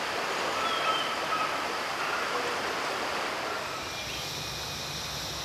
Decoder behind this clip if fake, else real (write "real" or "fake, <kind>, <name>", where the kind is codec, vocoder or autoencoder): real